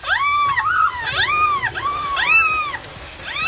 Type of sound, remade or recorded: recorded